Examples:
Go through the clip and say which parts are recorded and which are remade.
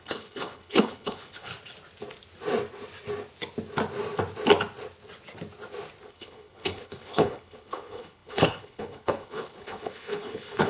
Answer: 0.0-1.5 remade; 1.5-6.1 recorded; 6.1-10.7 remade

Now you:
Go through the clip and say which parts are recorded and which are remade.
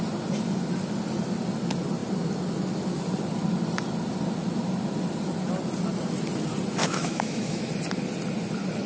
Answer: 0.0-6.8 recorded; 6.8-7.7 remade; 7.7-8.9 recorded